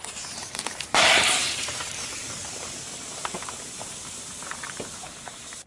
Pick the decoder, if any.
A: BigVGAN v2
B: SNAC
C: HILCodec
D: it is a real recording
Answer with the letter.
A